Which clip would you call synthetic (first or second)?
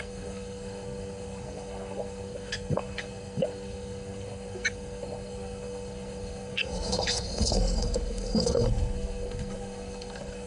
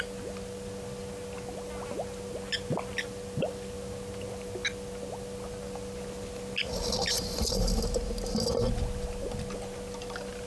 first